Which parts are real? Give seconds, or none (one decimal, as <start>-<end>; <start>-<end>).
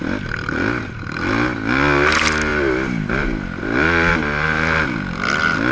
0.0-5.7